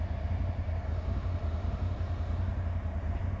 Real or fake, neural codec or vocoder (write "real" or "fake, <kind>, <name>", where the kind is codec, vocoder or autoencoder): real